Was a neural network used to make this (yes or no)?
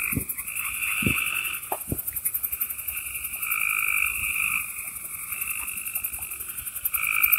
no